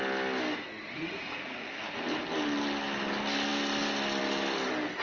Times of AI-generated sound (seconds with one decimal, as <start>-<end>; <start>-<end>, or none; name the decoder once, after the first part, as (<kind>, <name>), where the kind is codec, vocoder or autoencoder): 1.0-1.7 (vocoder, Vocos)